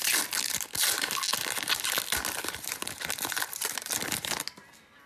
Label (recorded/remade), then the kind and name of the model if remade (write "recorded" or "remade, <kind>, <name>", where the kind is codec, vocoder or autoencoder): recorded